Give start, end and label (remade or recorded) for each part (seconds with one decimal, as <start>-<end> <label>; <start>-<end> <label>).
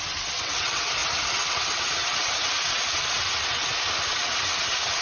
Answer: 0.0-5.0 remade